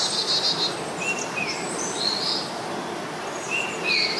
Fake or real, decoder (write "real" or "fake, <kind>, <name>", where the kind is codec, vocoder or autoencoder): real